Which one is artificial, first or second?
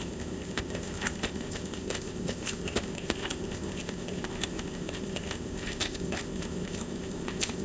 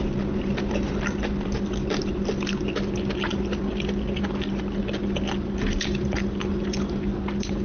first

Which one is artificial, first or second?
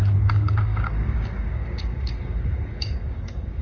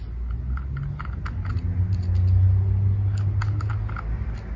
first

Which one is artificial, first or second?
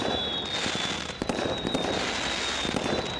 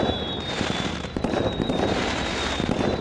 second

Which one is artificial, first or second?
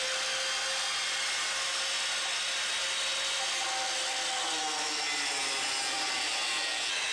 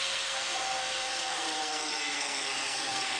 second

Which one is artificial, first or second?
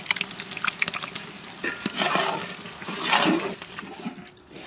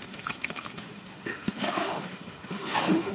second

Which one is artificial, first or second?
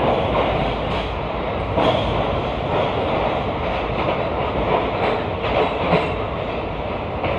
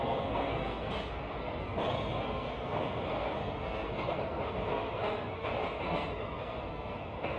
second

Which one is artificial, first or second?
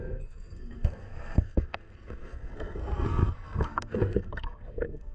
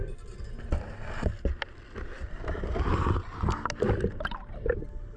first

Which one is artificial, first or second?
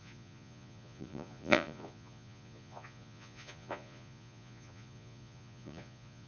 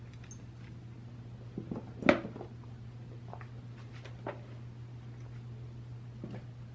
first